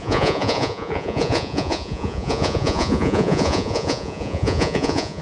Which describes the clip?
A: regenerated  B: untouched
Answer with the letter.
A